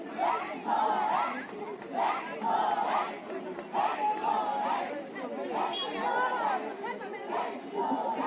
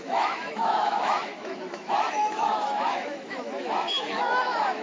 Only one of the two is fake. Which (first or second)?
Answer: second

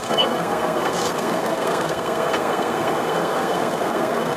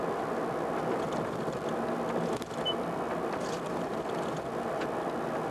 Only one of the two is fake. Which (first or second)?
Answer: first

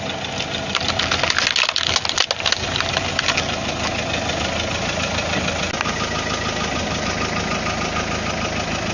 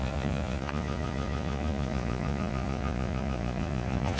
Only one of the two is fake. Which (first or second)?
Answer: second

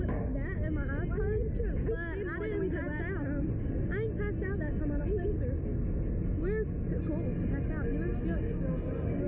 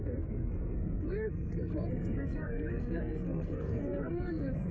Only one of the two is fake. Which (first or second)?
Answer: second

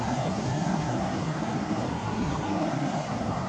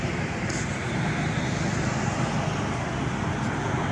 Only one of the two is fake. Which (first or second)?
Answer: first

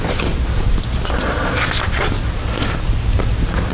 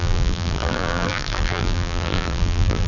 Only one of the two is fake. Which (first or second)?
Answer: second